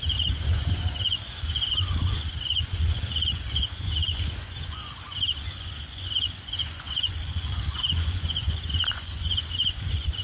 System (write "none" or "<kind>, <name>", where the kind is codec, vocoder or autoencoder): vocoder, Vocos